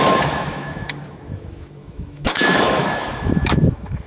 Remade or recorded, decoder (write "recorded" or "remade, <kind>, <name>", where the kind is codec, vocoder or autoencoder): remade, autoencoder, DAC-VAE